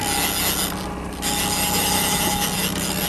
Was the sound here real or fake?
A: real